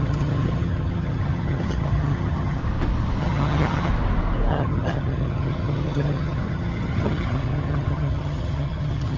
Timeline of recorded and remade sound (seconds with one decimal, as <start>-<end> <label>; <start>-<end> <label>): 0.0-2.6 remade; 2.6-3.2 recorded; 3.2-3.9 remade; 3.9-4.5 recorded; 4.5-9.2 remade